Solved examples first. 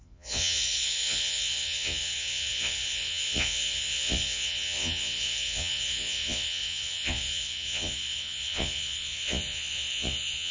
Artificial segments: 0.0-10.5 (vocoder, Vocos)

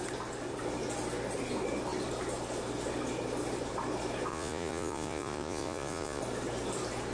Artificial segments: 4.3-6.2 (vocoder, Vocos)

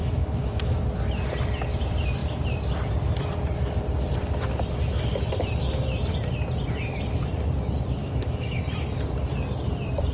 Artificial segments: 0.0-0.8 (autoencoder, DAC-VAE); 8.0-8.6